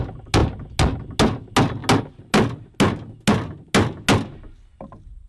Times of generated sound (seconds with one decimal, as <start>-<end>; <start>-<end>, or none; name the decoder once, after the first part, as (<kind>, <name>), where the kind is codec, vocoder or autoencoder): none